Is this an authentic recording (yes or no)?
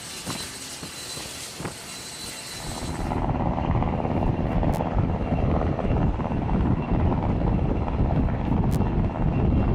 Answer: yes